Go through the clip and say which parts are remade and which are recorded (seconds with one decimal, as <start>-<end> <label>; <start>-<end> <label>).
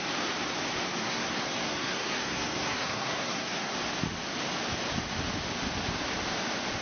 0.0-1.0 recorded; 1.0-3.7 remade; 3.7-6.8 recorded